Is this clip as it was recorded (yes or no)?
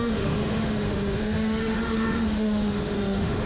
no